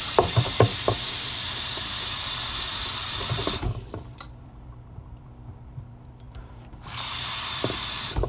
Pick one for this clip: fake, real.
fake